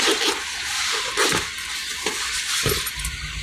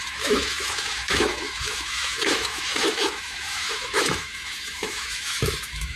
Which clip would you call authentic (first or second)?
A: first